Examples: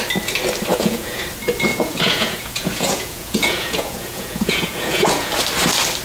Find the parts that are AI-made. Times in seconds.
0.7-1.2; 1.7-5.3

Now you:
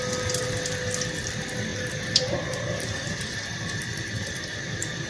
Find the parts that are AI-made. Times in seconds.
1.7-5.1

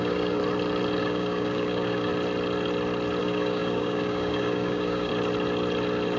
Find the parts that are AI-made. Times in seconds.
0.0-0.4; 1.0-2.1; 3.2-5.1